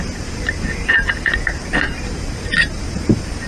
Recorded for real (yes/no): no